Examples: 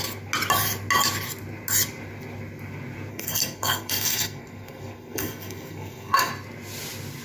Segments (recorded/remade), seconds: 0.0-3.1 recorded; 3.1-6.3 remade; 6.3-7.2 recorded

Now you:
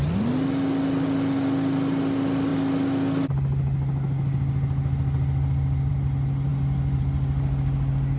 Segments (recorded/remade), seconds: 0.0-8.2 recorded

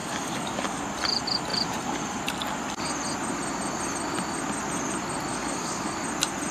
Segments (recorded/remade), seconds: 0.0-0.8 remade; 0.8-5.3 recorded; 5.3-5.9 remade; 5.9-6.5 recorded

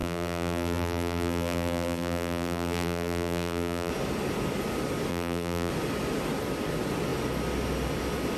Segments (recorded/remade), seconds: 0.0-3.9 remade; 3.9-5.1 recorded; 5.1-5.7 remade; 5.7-8.4 recorded

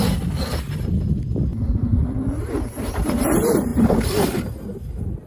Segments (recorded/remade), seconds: 0.0-5.3 recorded

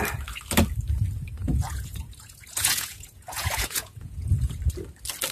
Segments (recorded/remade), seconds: 0.0-1.4 recorded; 1.4-4.6 remade; 4.6-5.3 recorded